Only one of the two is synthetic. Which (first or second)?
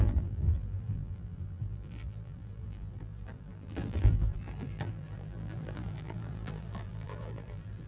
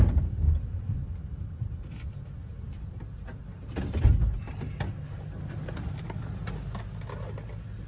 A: first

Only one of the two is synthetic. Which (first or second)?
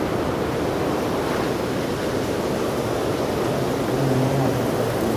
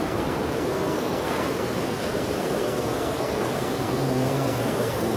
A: second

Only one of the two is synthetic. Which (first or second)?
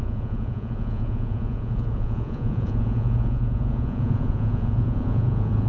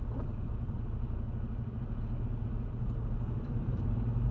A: first